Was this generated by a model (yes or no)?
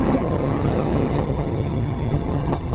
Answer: yes